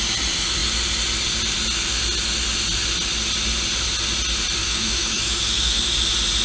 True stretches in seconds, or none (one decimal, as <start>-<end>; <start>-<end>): 0.0-4.6; 5.8-6.4